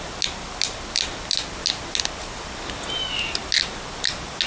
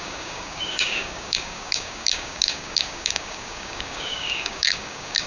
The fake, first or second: second